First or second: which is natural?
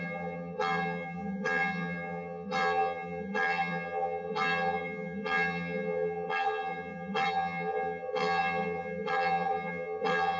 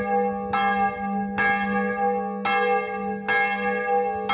second